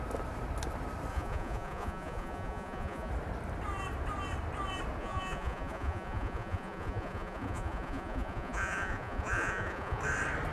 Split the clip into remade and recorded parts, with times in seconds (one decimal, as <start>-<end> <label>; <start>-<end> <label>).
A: 0.0-1.1 recorded; 1.1-3.1 remade; 3.1-5.0 recorded; 5.0-10.0 remade; 10.0-10.5 recorded